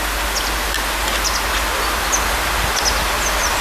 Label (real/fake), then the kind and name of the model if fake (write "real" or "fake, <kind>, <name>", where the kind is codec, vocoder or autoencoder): real